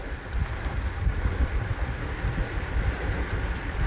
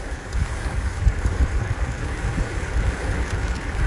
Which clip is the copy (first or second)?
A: second